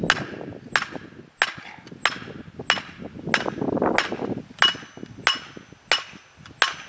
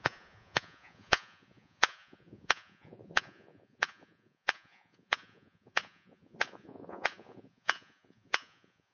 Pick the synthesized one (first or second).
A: second